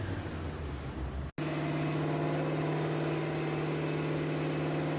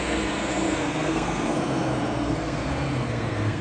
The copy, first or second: second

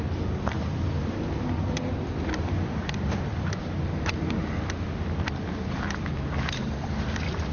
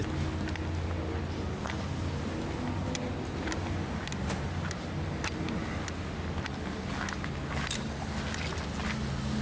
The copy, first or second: first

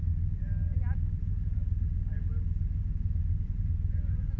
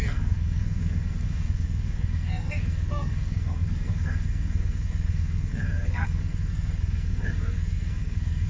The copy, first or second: second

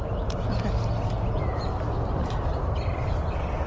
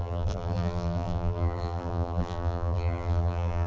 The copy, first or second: second